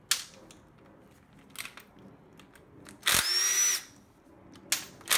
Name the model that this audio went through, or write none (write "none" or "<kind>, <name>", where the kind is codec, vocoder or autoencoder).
none